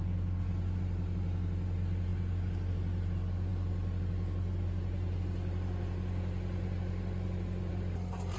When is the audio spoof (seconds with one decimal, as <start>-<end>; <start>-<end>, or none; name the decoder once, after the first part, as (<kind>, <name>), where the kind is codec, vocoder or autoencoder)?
none